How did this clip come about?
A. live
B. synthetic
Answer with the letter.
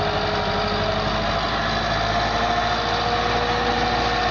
A